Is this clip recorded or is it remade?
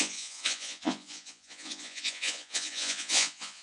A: remade